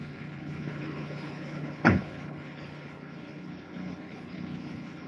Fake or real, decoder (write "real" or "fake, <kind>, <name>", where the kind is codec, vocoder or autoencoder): fake, codec, HILCodec